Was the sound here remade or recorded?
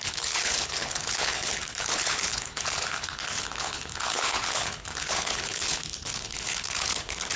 remade